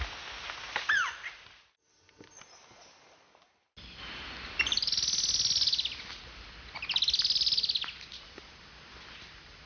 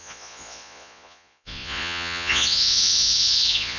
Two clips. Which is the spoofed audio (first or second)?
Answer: second